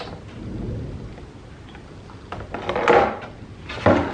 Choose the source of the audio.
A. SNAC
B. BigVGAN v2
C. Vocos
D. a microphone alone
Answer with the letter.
D